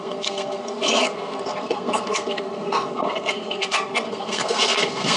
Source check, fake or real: fake